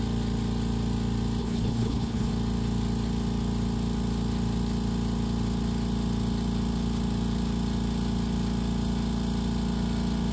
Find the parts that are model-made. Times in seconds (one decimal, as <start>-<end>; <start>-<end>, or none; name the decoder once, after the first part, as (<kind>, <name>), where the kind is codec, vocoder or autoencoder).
1.4-2.3 (codec, HILCodec)